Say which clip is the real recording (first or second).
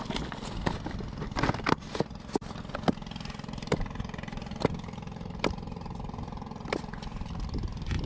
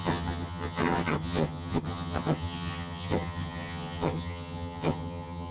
first